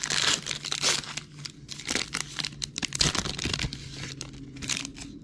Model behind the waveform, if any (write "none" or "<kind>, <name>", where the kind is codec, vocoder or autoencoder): none